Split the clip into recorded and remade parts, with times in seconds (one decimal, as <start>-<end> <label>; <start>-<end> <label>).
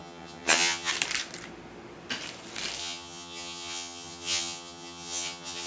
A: 0.0-0.9 remade; 0.9-2.8 recorded; 2.8-5.7 remade